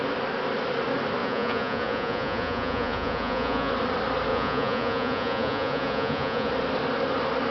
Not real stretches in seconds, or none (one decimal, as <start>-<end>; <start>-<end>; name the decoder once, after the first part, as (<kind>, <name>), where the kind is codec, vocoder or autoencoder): 1.2-3.7 (vocoder, Vocos); 4.3-6.5